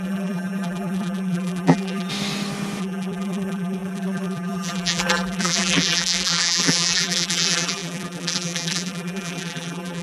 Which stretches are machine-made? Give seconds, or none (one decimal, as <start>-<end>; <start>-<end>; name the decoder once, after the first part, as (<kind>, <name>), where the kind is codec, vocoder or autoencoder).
0.0-2.1 (vocoder, BigVGAN v2); 2.8-10.0